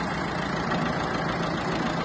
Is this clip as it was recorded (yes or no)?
yes